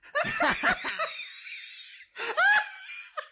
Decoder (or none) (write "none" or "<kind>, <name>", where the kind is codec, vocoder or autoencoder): none